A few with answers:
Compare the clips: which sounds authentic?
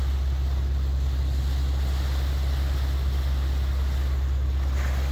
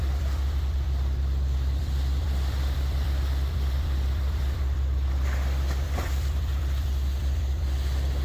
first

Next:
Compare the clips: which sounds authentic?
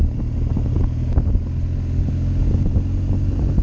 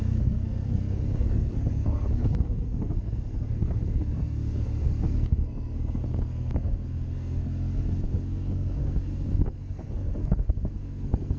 first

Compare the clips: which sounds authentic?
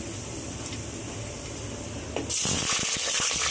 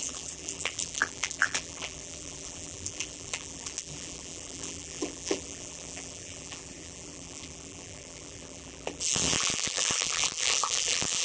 first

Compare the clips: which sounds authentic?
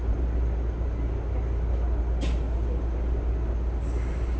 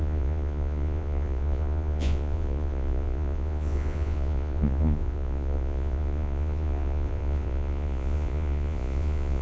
first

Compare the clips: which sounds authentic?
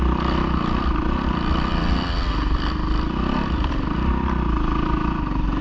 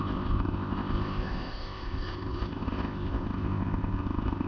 first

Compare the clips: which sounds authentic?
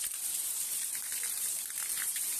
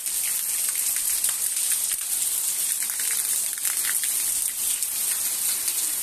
second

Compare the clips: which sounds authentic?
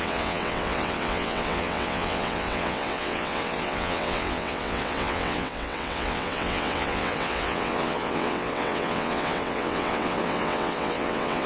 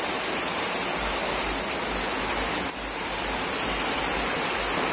second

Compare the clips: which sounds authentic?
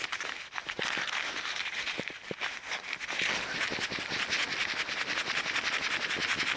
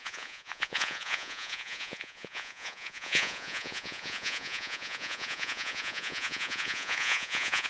first